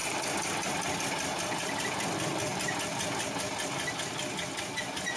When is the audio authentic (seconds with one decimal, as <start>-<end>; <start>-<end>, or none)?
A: 0.0-5.2